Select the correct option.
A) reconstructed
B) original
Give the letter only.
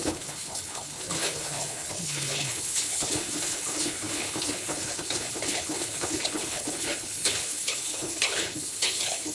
A